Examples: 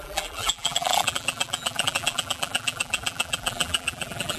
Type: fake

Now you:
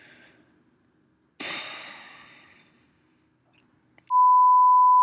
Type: real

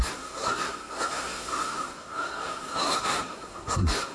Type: fake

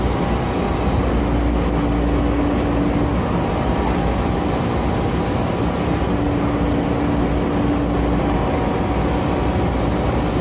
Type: real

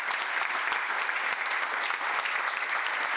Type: real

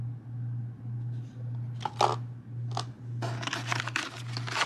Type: real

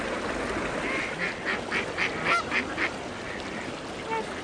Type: real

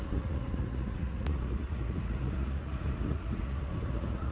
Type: fake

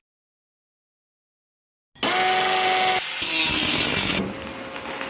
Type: real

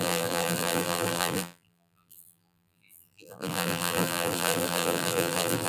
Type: fake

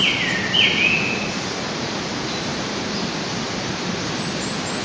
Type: real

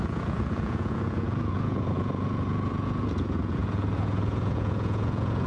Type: fake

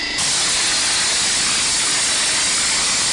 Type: real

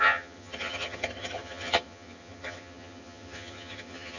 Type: fake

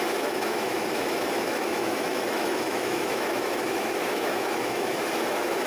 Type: fake